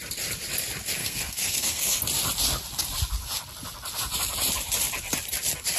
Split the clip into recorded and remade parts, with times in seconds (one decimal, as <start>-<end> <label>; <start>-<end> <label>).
0.0-1.0 recorded; 1.0-2.0 remade; 2.0-5.8 recorded